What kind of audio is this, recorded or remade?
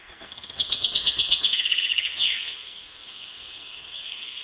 remade